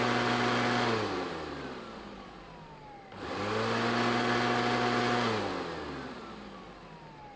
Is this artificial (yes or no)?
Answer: no